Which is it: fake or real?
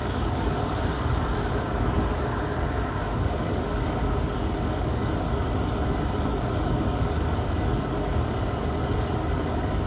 fake